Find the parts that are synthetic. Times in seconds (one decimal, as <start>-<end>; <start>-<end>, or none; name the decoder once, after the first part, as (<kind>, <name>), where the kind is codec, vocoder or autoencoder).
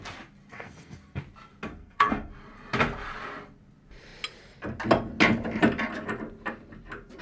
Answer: 0.5-1.2 (codec, SNAC); 1.7-2.3